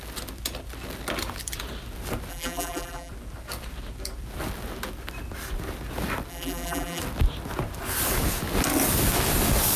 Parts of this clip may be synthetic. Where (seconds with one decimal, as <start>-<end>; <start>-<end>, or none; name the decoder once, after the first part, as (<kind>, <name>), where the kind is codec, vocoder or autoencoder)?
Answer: 2.3-3.1 (vocoder, BigVGAN v2); 6.3-7.0